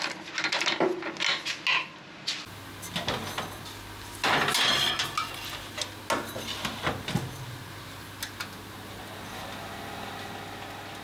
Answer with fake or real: real